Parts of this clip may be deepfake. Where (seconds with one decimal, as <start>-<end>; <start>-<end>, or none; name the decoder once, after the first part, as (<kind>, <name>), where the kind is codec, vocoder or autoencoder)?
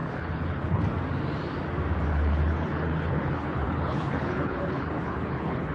0.0-0.8 (codec, HILCodec); 2.1-5.7